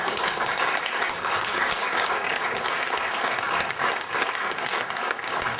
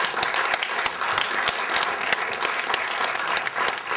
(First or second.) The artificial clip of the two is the first